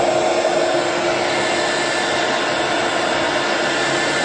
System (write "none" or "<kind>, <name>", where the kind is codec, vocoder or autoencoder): none